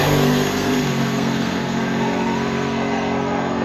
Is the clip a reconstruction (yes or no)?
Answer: yes